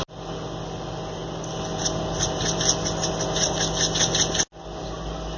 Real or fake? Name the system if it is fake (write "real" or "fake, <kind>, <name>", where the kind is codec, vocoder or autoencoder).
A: real